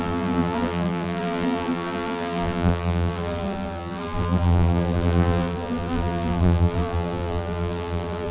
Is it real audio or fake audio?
fake